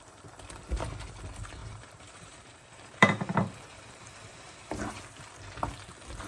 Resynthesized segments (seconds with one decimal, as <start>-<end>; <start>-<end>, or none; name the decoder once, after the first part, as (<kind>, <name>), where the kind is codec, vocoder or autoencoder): 1.6-5.0 (vocoder, BigVGAN v2)